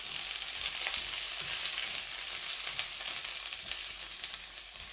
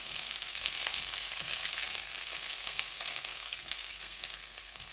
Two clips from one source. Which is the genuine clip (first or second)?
first